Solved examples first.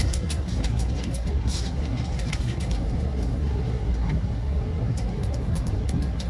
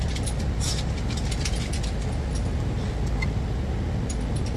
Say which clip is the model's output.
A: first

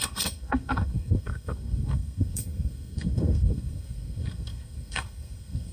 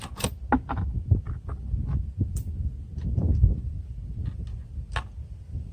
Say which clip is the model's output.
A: first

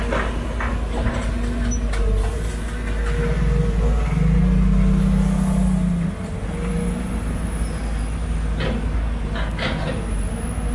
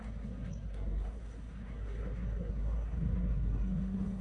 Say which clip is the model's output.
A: second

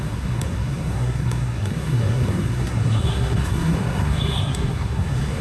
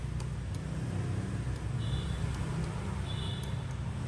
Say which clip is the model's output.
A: first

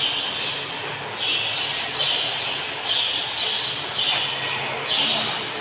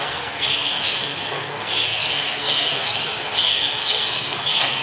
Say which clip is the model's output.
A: second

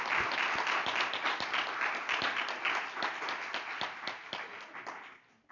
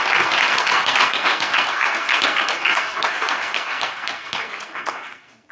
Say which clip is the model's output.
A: second